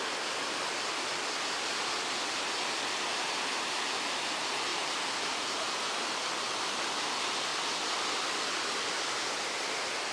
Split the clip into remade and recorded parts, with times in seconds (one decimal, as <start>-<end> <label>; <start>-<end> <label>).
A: 0.0-10.1 recorded